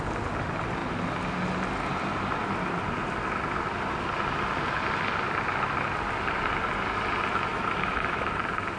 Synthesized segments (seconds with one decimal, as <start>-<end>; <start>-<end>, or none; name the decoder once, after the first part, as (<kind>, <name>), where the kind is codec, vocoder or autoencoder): 7.5-8.4 (autoencoder, DAC-VAE)